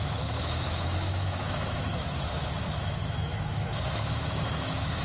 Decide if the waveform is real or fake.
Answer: fake